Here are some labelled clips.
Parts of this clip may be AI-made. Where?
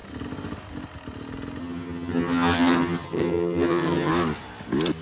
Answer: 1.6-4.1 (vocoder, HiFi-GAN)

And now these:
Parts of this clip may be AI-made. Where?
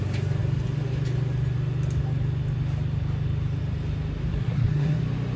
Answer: 4.3-5.0 (codec, SNAC)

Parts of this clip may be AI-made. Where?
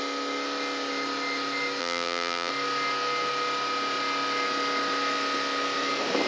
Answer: 1.8-2.5 (vocoder, BigVGAN v2)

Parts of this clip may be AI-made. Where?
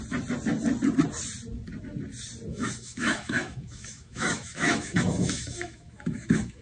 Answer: 2.5-6.6 (autoencoder, DAC-VAE)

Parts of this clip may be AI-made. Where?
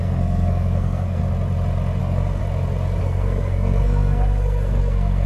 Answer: 0.0-1.2 (codec, SNAC); 2.0-2.4; 3.0-5.3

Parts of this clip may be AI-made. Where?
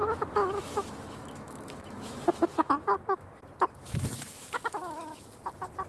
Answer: 0.0-3.4 (autoencoder, DAC-VAE); 3.8-5.3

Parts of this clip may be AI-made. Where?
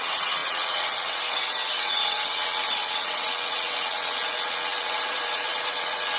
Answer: 0.0-6.2 (vocoder, WaveNeXt)